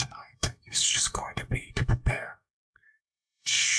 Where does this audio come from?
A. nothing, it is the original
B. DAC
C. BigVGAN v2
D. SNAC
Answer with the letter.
D